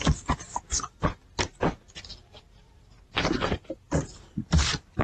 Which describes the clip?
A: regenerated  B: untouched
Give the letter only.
B